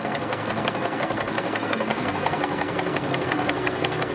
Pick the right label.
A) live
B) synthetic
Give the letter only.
B